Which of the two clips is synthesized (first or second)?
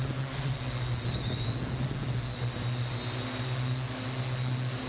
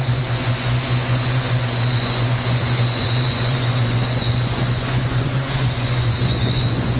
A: second